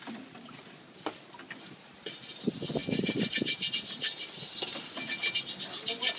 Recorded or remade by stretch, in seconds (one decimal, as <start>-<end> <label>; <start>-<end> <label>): 0.0-6.2 recorded